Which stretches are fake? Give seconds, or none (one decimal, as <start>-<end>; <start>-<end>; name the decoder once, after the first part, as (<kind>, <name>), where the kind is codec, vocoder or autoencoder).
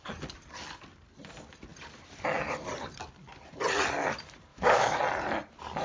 4.5-5.0 (autoencoder, DAC-VAE)